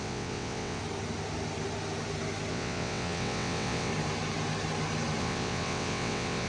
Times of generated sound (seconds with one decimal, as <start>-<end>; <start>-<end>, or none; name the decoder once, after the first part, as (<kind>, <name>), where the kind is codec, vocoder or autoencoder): 0.0-0.8 (vocoder, WaveNeXt); 2.5-3.9; 5.2-6.5